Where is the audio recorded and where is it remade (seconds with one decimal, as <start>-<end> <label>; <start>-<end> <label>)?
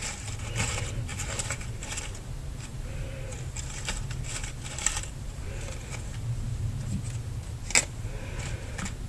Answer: 0.0-9.1 recorded